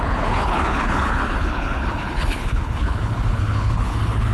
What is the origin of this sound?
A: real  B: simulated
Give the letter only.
B